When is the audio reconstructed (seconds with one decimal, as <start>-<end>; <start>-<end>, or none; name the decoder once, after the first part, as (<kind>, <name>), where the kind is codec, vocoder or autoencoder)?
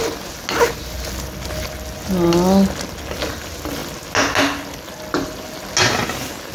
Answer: none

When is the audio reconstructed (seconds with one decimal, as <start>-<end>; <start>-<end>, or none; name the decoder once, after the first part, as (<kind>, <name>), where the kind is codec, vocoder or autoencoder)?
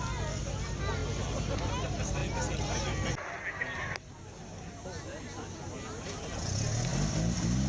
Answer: none